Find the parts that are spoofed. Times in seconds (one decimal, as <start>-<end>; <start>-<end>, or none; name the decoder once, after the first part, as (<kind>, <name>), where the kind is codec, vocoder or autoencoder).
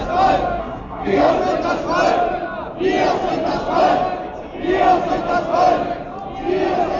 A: 0.6-1.3 (codec, SNAC)